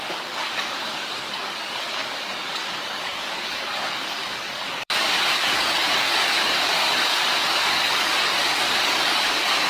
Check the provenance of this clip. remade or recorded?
remade